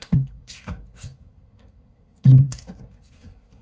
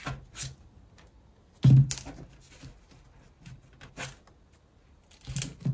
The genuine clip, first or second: second